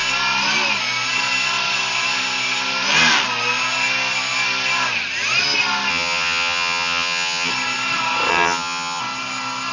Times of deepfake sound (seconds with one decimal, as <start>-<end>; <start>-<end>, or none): 5.9-7.5; 8.3-9.0